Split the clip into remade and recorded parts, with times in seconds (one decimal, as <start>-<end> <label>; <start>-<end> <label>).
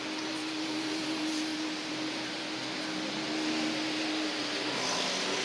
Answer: 0.0-1.5 recorded; 1.5-2.4 remade; 2.4-5.4 recorded